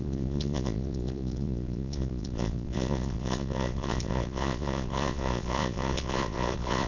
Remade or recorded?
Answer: remade